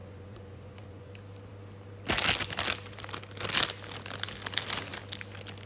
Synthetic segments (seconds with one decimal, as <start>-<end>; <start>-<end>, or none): 0.0-1.1